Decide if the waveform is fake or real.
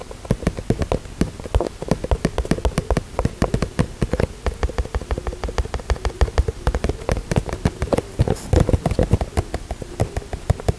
real